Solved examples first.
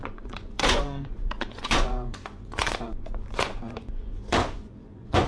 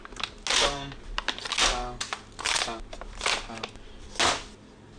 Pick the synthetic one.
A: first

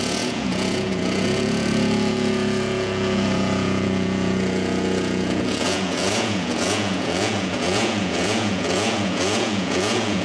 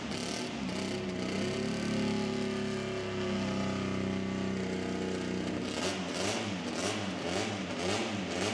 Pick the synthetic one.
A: first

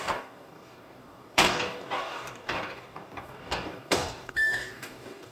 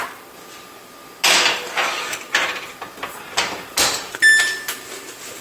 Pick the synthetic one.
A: first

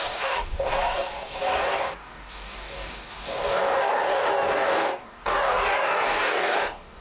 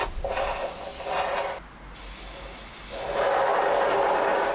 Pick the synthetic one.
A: first